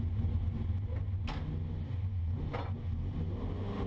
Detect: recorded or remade recorded